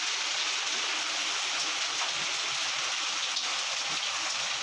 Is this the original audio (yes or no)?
yes